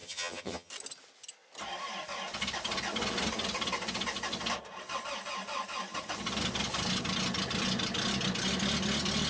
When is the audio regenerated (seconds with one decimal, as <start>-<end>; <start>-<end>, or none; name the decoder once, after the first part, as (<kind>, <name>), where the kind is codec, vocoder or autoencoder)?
0.0-0.7 (vocoder, HiFi-GAN)